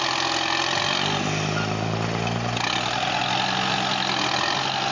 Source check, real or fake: real